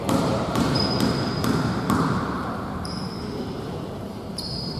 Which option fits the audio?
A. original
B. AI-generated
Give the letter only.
B